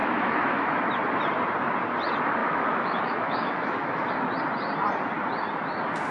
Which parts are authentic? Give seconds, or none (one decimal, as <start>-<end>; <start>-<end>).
0.8-2.4; 4.1-6.1